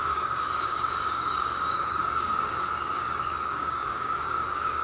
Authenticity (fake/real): fake